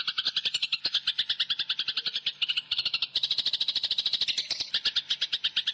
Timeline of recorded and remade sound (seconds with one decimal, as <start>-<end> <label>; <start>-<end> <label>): 0.0-5.7 recorded